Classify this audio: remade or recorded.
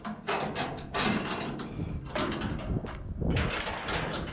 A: recorded